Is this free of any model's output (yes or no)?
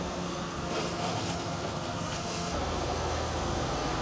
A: no